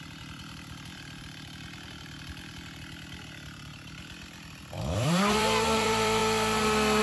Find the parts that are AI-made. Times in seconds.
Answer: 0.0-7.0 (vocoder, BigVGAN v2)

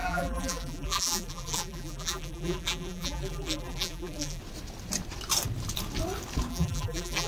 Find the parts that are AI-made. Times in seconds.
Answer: 0.0-4.4 (vocoder, BigVGAN v2); 6.5-7.3

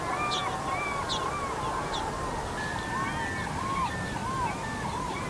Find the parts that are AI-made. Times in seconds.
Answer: 0.0-0.4 (vocoder, BigVGAN v2); 3.6-4.2; 4.8-5.3

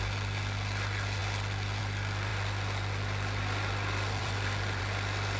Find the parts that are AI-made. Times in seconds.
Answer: 2.3-4.8 (vocoder, BigVGAN v2)

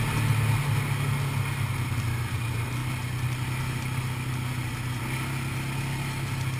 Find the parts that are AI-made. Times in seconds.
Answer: none

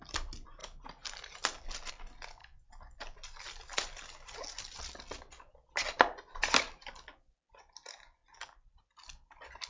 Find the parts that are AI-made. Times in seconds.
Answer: 8.2-8.8 (vocoder, BigVGAN v2)